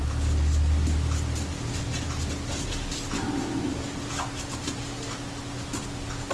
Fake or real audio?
real